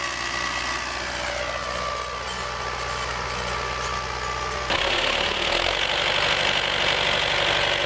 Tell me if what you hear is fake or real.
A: real